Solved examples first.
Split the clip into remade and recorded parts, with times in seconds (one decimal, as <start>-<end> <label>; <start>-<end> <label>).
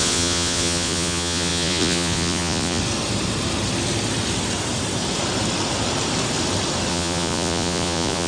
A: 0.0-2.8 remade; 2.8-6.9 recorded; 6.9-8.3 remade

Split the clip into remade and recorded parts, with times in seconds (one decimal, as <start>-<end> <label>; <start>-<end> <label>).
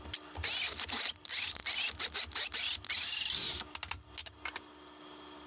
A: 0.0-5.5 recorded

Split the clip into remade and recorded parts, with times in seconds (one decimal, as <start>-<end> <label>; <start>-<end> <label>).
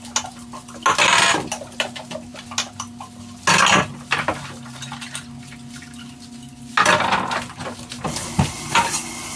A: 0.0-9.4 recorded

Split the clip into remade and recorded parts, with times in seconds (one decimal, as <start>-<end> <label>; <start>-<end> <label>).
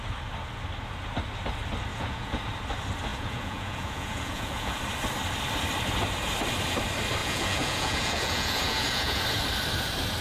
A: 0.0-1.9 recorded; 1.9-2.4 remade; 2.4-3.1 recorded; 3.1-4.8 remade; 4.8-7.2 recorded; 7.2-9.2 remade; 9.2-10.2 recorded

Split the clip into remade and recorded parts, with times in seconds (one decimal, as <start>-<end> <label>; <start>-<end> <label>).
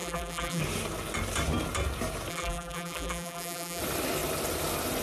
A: 0.0-0.6 remade; 0.6-2.3 recorded; 2.3-3.8 remade; 3.8-5.0 recorded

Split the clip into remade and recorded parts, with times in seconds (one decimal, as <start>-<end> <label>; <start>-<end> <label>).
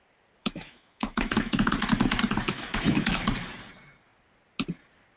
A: 0.0-0.4 recorded; 0.4-1.7 remade; 1.7-2.5 recorded; 2.5-3.2 remade; 3.2-5.2 recorded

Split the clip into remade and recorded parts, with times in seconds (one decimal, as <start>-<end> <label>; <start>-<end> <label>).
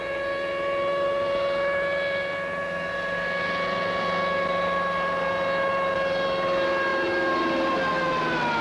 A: 0.0-8.6 recorded